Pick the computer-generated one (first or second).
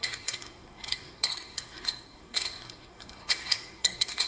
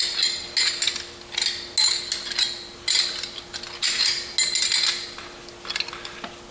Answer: first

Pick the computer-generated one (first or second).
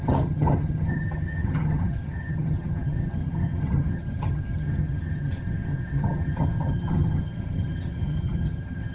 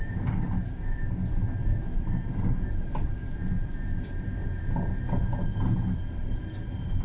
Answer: first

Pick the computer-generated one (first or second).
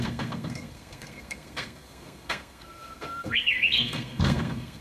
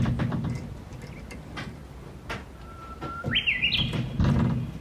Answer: first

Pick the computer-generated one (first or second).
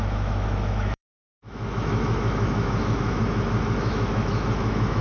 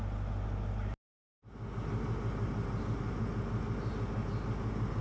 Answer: first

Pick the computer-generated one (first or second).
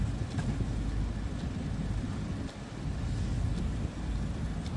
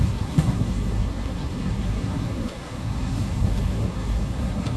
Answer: second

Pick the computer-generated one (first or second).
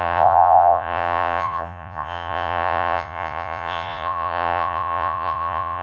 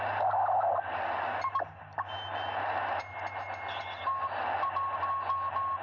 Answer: first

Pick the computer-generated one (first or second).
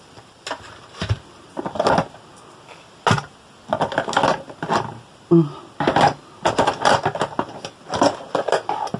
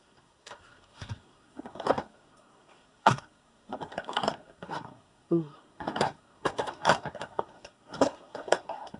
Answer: second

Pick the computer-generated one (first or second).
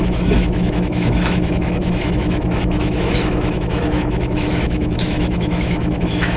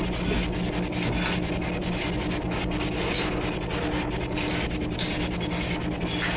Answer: first